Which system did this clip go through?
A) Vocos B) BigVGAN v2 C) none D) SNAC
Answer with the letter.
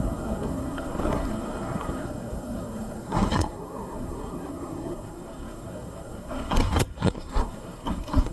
D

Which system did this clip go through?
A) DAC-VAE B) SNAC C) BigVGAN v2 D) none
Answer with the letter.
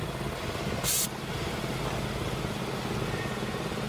D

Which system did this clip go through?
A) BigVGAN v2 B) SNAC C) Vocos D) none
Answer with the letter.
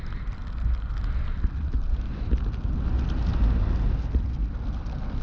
D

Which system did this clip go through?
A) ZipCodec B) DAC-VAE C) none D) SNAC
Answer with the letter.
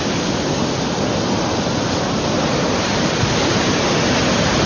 C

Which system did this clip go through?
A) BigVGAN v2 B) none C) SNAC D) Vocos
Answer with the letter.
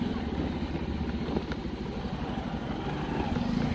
B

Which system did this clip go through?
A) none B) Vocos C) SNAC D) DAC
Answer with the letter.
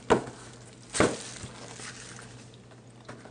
A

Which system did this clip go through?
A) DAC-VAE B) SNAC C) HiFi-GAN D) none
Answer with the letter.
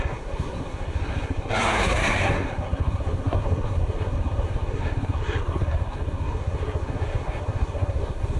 B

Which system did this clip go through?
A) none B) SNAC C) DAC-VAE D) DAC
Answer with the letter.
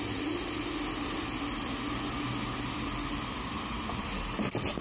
A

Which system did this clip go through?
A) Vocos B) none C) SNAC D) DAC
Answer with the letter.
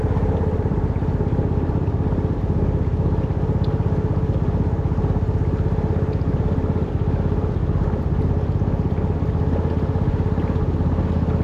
B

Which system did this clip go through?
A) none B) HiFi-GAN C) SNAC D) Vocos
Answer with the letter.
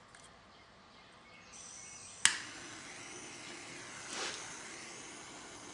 A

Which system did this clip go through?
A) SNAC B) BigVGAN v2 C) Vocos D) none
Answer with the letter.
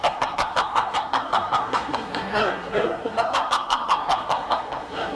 A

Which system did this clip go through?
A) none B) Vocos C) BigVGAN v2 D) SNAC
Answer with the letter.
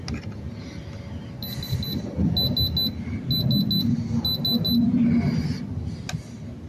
A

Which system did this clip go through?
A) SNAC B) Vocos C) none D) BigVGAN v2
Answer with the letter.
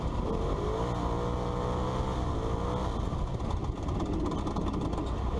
C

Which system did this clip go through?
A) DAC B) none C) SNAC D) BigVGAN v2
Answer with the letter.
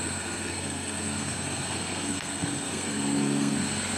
C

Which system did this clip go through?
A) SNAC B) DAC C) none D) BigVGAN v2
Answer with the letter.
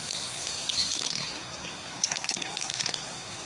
A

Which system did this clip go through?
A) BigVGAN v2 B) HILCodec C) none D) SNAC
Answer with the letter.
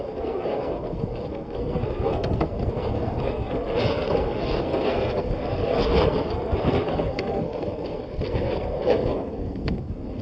D